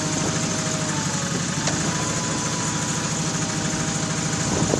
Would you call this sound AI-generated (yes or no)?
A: no